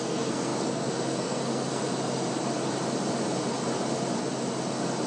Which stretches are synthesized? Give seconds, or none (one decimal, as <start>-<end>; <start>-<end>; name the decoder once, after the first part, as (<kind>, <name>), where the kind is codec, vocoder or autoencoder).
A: 0.0-1.8 (codec, SNAC)